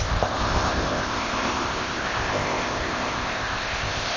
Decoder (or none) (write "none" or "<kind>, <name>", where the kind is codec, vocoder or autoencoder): codec, ZipCodec